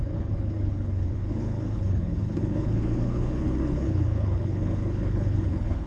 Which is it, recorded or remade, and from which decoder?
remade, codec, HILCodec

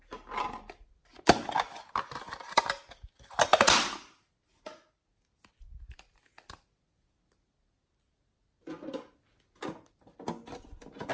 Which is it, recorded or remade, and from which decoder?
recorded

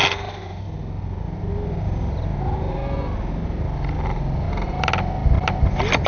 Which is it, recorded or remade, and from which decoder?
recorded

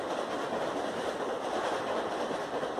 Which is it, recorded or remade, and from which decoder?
recorded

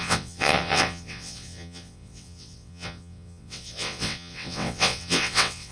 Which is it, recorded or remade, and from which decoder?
remade, vocoder, WaveNeXt